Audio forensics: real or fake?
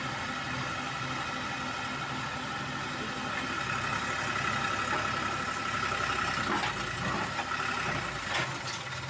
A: real